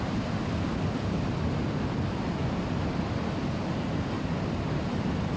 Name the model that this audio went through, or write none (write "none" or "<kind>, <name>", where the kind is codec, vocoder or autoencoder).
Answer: none